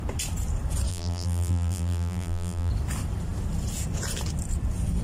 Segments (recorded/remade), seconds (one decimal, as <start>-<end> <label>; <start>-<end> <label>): 0.0-0.9 recorded; 0.9-2.7 remade; 2.7-5.0 recorded